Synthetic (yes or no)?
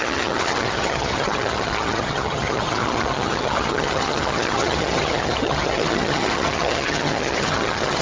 yes